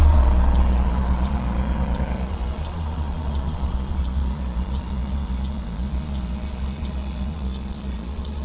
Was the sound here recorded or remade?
remade